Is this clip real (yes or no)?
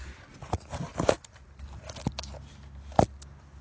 yes